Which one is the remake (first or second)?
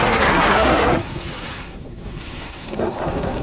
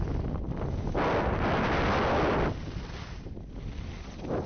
first